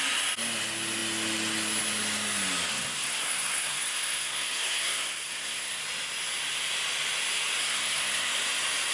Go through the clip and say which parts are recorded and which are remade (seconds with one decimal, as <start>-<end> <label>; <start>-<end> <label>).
0.0-2.7 recorded; 2.7-5.8 remade; 5.8-7.6 recorded; 7.6-8.3 remade; 8.3-8.9 recorded